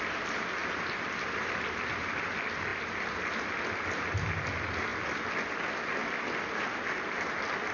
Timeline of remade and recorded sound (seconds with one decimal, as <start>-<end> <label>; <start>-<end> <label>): 0.0-7.7 recorded